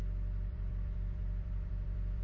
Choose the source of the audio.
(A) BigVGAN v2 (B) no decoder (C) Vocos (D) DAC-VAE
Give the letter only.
A